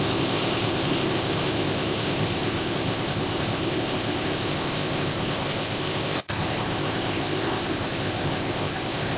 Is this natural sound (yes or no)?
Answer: no